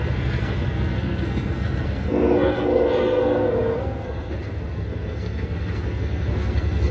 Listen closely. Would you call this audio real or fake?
fake